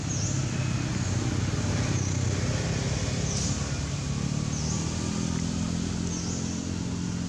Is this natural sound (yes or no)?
yes